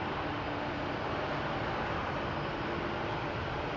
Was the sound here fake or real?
real